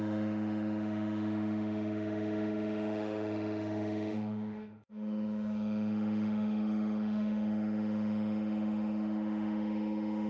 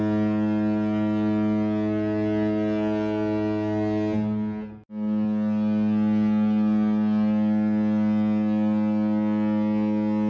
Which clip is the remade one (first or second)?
first